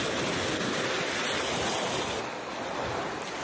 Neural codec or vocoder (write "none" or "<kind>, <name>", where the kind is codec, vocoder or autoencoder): none